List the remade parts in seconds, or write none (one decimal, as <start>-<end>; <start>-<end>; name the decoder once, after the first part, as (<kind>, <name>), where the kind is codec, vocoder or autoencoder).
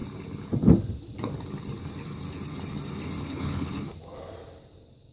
3.2-3.7 (codec, HILCodec)